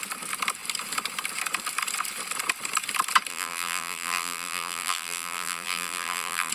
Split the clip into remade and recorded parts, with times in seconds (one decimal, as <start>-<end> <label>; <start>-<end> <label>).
0.0-3.3 recorded; 3.3-6.5 remade